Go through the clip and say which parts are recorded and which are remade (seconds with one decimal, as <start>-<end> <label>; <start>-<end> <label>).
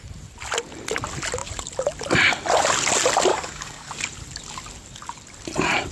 0.0-3.3 recorded; 3.3-3.9 remade; 3.9-5.9 recorded